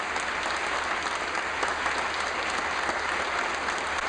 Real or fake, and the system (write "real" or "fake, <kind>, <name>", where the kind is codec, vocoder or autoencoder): real